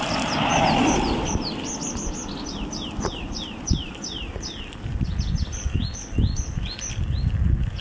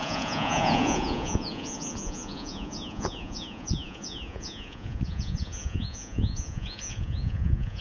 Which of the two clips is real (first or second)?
first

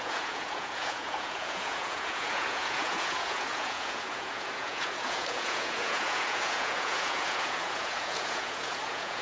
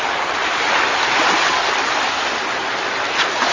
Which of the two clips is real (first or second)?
second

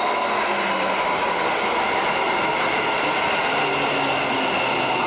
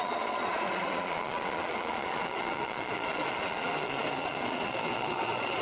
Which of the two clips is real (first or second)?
first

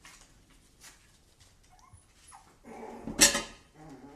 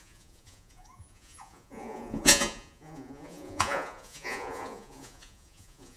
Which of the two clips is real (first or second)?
first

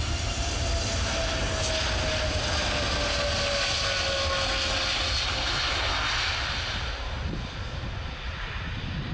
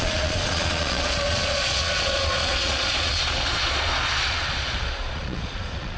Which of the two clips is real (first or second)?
first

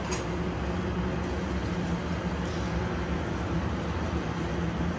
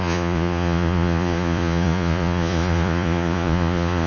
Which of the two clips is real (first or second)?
first